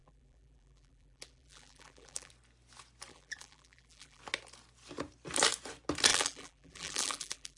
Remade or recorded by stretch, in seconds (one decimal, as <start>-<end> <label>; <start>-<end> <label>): 0.0-2.3 remade; 2.3-3.1 recorded; 3.1-4.2 remade; 4.2-6.1 recorded; 6.1-7.6 remade